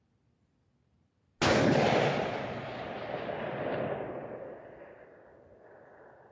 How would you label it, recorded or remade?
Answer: recorded